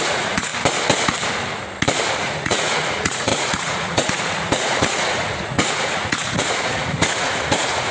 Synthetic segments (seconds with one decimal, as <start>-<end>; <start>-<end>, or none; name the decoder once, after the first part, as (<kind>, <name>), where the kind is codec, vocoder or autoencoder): 0.0-0.5 (vocoder, Vocos); 2.2-7.9